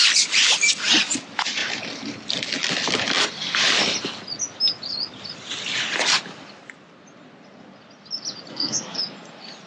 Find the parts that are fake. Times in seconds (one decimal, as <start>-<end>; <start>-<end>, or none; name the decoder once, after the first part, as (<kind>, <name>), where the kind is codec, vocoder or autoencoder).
8.5-9.0 (codec, SNAC)

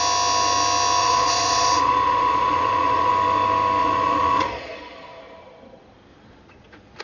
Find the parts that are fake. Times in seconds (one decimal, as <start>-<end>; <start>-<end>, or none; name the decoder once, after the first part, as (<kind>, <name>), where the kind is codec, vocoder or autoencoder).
1.0-3.1 (vocoder, Vocos); 3.8-4.8; 6.1-7.0